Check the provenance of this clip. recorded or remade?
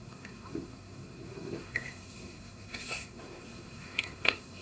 remade